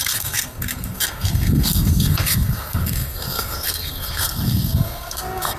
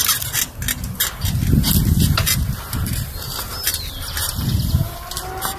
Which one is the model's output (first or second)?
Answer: first